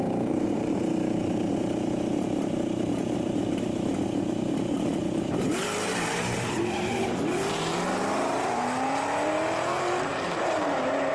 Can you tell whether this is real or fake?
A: fake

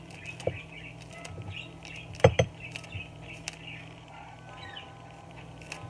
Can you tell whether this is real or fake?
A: fake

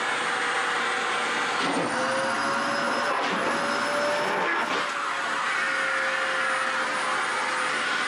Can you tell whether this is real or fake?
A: real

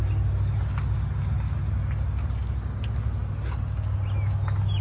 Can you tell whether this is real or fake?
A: real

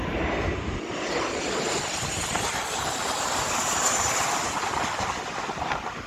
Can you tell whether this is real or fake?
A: real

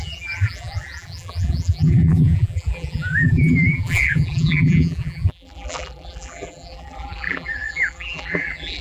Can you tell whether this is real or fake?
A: fake